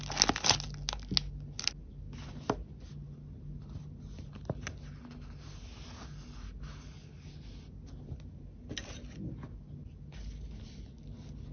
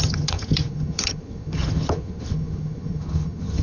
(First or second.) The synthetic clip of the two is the second